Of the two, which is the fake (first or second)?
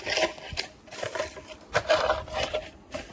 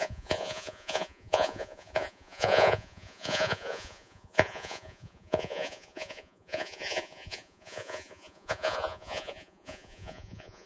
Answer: second